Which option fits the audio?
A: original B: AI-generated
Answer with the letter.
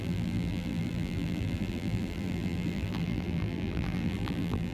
B